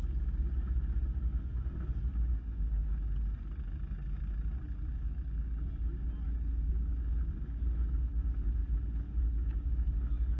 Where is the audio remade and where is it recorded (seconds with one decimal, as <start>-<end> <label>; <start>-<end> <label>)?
0.0-10.4 recorded